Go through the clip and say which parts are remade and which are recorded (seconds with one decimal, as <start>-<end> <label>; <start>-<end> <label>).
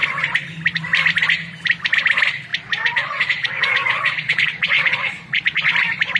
0.0-2.5 recorded; 2.5-5.7 remade; 5.7-6.2 recorded